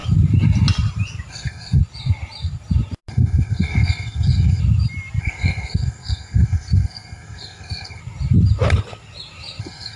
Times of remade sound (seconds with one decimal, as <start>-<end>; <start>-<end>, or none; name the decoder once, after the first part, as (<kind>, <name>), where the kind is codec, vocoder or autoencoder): 1.3-1.8 (codec, SNAC); 3.1-4.6; 5.2-8.0; 9.6-10.0